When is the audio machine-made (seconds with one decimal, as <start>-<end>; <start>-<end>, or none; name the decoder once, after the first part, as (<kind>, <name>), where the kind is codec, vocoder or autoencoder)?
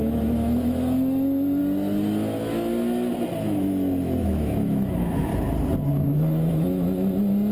0.0-1.6 (autoencoder, DAC-VAE); 4.2-5.3; 5.9-7.5